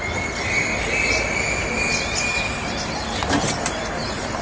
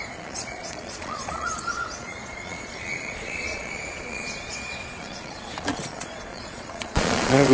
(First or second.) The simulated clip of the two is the second